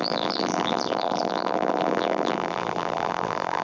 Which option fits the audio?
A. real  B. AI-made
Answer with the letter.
B